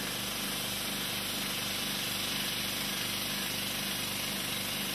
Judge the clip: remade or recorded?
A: recorded